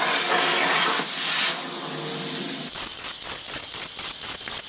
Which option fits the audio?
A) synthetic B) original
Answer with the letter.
B